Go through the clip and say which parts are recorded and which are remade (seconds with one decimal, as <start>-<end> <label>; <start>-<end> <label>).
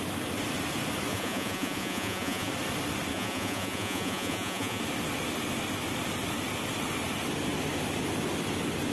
0.0-1.1 recorded; 1.1-2.5 remade; 2.5-3.1 recorded; 3.1-4.8 remade; 4.8-8.9 recorded